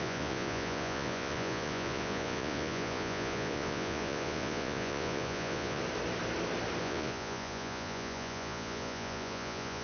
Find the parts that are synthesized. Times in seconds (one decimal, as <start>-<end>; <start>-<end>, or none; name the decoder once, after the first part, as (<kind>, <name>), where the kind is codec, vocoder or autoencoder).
0.0-5.8 (vocoder, Vocos); 6.8-9.8